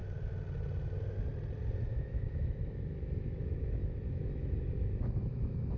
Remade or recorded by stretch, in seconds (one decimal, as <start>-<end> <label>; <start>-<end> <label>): 0.0-1.9 recorded; 1.9-5.8 remade